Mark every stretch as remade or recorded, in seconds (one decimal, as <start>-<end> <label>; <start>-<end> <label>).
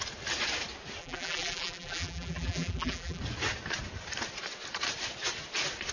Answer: 0.0-1.0 recorded; 1.0-3.2 remade; 3.2-5.9 recorded